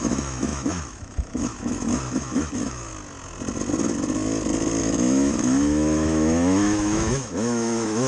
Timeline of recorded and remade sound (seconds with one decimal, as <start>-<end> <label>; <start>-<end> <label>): 0.0-2.9 remade; 2.9-4.8 recorded; 4.8-8.1 remade